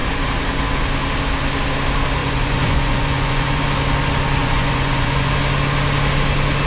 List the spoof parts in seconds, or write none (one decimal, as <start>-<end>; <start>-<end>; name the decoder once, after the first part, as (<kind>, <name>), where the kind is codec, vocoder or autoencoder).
2.2-3.6 (vocoder, Vocos); 4.4-5.3